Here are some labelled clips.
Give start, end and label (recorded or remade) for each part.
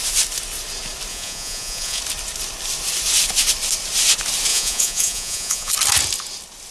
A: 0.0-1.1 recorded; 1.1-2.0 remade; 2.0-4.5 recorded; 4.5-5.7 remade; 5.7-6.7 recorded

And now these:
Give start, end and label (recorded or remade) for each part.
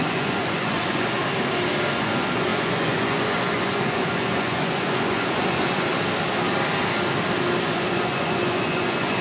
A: 0.0-1.2 remade; 1.2-1.9 recorded; 1.9-5.9 remade; 5.9-7.6 recorded; 7.6-9.2 remade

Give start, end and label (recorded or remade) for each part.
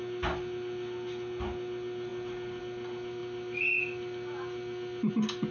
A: 0.0-5.5 recorded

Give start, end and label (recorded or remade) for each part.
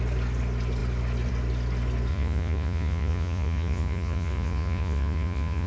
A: 0.0-2.1 recorded; 2.1-5.7 remade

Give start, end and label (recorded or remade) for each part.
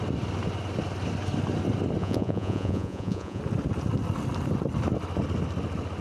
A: 0.0-2.0 recorded; 2.0-3.4 remade; 3.4-6.0 recorded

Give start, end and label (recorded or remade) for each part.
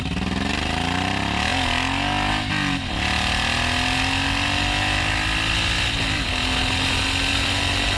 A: 0.0-8.0 recorded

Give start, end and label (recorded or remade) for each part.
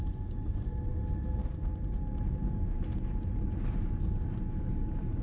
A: 0.0-5.2 recorded